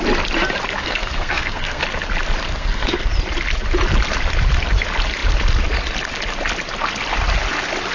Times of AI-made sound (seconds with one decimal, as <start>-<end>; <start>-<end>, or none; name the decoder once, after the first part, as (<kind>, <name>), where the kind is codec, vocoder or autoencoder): 0.8-1.8 (codec, SNAC); 2.5-3.1